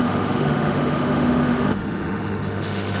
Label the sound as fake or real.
fake